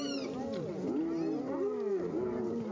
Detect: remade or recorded recorded